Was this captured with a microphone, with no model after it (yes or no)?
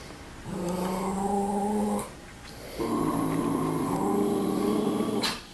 yes